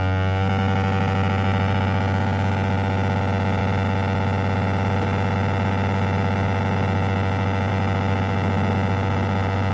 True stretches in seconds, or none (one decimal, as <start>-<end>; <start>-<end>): 0.0-9.7